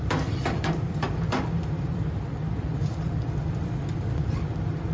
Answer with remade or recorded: remade